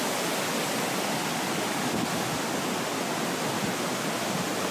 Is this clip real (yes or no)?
yes